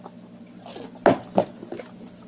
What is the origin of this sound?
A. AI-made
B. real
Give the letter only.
B